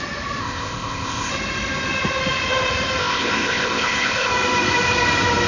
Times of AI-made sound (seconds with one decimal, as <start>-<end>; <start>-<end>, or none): 0.4-1.3; 3.0-4.3